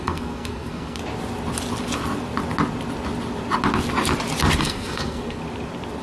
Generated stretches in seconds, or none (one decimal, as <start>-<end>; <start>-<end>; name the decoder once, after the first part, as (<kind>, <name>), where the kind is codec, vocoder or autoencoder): 0.0-1.0 (codec, SNAC); 4.6-5.4